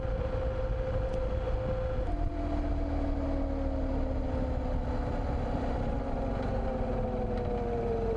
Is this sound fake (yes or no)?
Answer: no